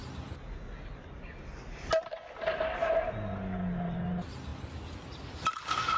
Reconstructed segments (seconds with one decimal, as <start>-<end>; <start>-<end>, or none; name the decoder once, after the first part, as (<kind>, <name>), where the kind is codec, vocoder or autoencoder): none